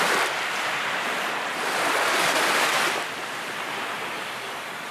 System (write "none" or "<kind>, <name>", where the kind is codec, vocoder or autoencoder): vocoder, BigVGAN v2